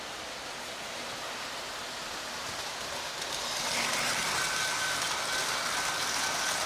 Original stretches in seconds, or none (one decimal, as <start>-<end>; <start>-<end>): 0.0-6.7